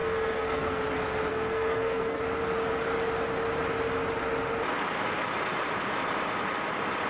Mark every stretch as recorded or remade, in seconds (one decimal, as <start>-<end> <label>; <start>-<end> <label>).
0.0-0.8 remade; 0.8-1.3 recorded; 1.3-2.2 remade; 2.2-7.1 recorded